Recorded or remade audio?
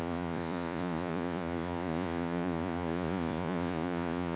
remade